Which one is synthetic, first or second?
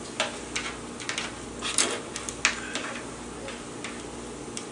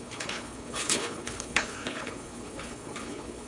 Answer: second